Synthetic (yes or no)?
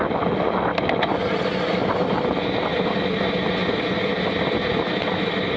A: no